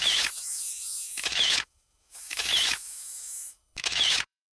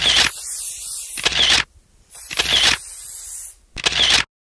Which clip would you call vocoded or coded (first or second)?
first